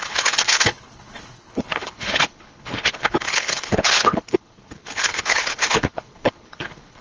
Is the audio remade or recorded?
remade